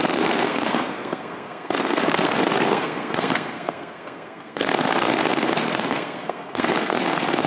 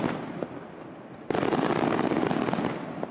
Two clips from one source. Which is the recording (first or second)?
second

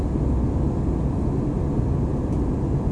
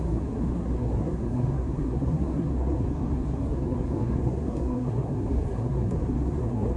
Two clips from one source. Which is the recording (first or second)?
first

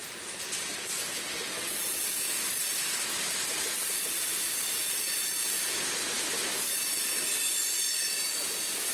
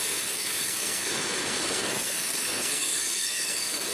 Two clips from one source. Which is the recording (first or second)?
first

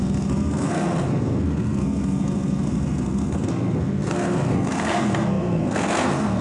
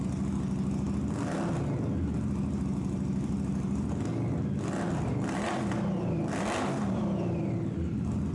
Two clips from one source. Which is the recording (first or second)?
second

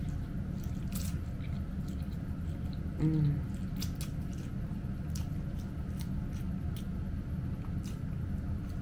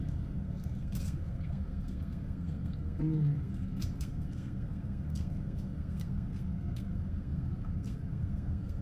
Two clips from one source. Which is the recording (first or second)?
first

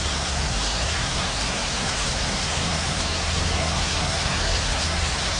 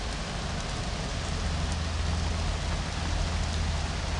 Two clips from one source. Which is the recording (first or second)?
second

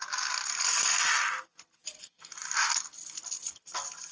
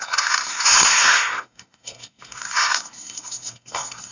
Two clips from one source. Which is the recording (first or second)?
first